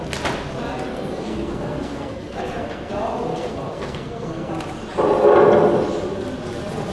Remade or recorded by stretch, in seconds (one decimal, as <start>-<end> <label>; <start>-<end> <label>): 0.0-0.9 recorded; 0.9-2.9 remade; 2.9-3.3 recorded; 3.3-4.5 remade; 4.5-6.9 recorded